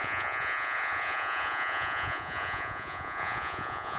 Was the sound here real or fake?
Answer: fake